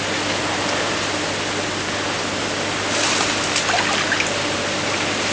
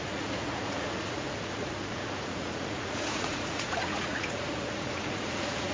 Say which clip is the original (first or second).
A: first